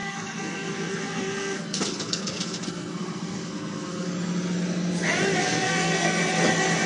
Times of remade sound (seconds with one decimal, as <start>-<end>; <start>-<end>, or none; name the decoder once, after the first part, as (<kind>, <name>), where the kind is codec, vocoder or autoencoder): 0.0-4.1 (codec, SNAC); 5.4-6.2